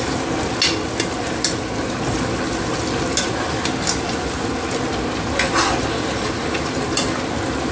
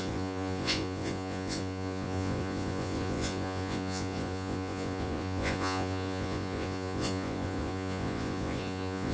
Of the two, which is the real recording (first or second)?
first